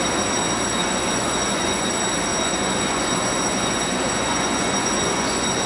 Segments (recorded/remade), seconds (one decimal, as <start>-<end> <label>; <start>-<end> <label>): 0.0-0.7 recorded; 0.7-1.9 remade; 1.9-2.3 recorded; 2.3-5.7 remade